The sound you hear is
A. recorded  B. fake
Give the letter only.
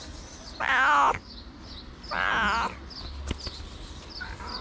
A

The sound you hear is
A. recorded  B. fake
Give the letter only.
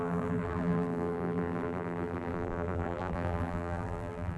B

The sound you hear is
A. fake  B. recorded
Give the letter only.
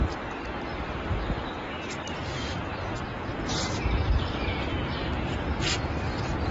B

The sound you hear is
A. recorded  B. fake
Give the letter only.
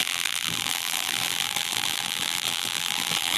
B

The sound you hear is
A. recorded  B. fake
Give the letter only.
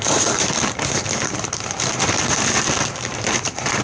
B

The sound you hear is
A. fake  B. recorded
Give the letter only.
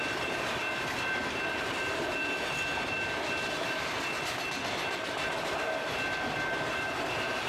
B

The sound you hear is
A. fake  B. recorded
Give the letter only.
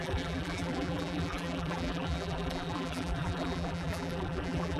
A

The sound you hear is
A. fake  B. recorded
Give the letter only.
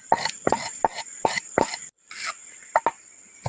B